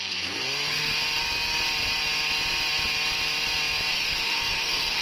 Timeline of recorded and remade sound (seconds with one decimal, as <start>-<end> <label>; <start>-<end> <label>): 0.0-0.9 remade; 0.9-3.9 recorded; 3.9-5.0 remade